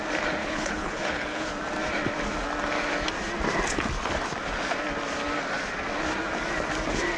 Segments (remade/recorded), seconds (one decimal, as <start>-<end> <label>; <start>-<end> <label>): 0.0-0.4 recorded; 0.4-1.5 remade; 1.5-7.2 recorded